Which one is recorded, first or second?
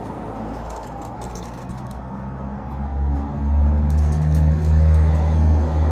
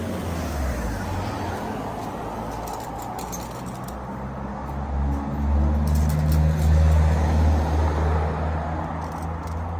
second